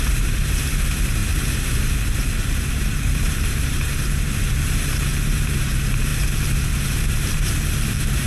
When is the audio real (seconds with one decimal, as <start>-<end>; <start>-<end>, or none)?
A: none